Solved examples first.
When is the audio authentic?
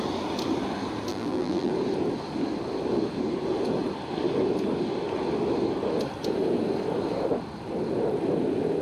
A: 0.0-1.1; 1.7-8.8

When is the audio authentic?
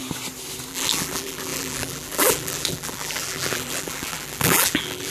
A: 0.0-0.7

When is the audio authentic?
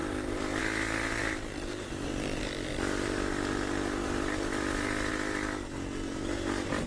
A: 0.6-1.2; 5.1-6.9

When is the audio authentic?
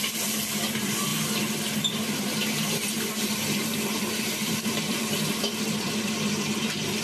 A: 1.1-1.8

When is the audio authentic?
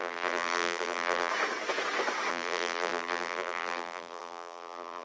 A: 1.3-2.3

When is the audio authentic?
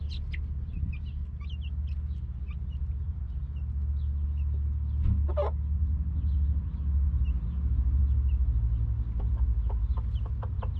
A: 0.0-10.8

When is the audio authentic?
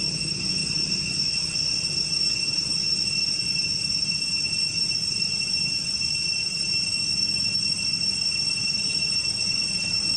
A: 0.0-10.2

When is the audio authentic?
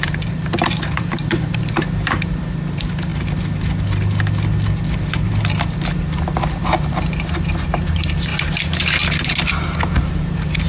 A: 3.1-6.9; 8.3-10.1